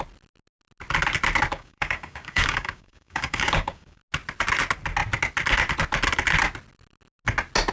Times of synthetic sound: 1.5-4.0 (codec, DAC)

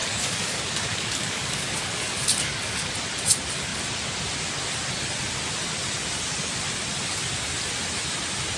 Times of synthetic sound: 0.0-2.9 (codec, DAC)